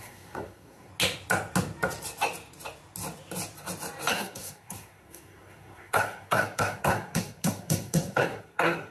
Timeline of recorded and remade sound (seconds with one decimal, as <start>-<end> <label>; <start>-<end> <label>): 0.0-0.9 remade; 0.9-4.1 recorded; 4.1-8.9 remade